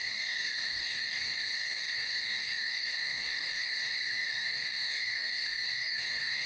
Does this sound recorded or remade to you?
remade